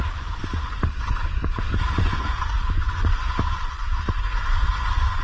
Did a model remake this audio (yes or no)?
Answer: yes